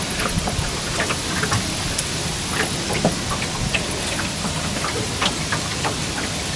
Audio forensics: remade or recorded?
recorded